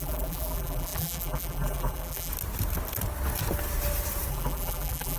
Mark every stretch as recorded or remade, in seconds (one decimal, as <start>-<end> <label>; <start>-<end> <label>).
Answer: 0.0-2.3 remade; 2.3-4.3 recorded; 4.3-5.2 remade